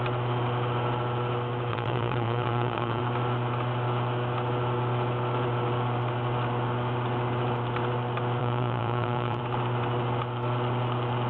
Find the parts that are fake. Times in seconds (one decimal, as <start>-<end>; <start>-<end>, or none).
1.7-3.0; 8.4-9.4